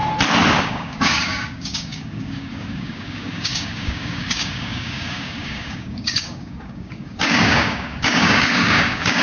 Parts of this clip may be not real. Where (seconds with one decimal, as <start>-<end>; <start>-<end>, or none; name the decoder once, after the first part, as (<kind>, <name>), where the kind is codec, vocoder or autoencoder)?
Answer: 0.6-9.2 (codec, DAC)